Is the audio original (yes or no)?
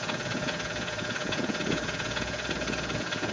no